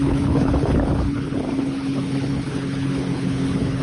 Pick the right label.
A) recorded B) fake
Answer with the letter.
B